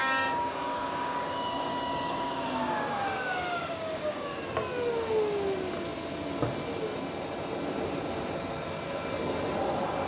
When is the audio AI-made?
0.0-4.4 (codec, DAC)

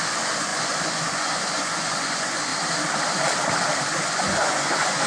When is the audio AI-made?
0.0-2.5 (vocoder, Vocos); 3.8-5.1

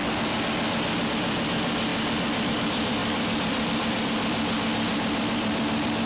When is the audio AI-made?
1.1-1.9 (vocoder, BigVGAN v2); 2.5-6.1

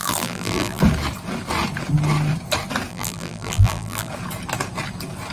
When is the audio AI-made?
0.0-0.8 (vocoder, BigVGAN v2); 2.9-4.1

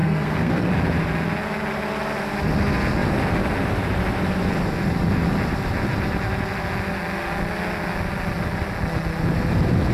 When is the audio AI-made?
0.0-0.7 (codec, SNAC)

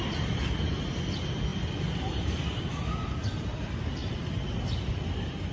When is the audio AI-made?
none